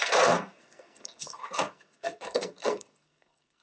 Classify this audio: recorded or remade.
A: remade